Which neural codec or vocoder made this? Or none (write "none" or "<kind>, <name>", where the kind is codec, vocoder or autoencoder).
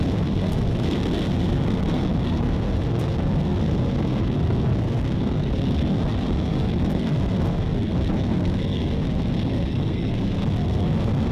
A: codec, SNAC